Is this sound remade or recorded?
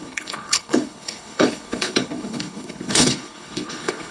remade